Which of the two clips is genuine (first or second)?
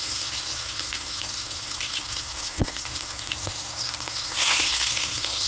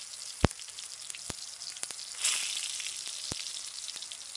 second